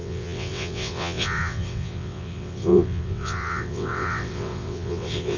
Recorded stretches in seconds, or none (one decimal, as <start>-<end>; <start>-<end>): none